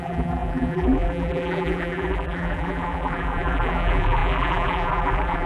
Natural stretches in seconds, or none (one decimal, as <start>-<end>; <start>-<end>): none